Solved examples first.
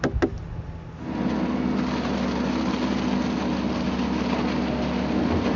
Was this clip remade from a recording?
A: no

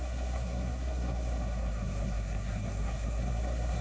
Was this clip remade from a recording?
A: yes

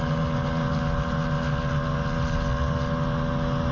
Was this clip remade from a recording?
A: no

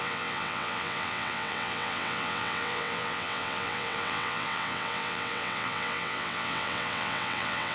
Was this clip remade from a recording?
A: yes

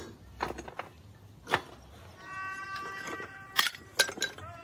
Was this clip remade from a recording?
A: no